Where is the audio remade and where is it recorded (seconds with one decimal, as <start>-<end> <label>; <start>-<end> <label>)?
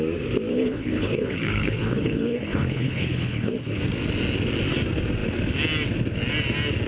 0.0-0.5 recorded; 0.5-3.8 remade; 3.8-6.9 recorded